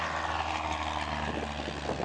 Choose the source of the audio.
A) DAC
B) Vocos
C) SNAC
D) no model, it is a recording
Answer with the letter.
D